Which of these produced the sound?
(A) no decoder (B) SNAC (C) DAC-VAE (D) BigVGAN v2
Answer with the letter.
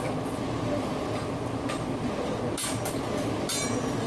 A